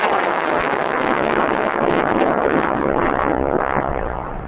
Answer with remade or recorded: remade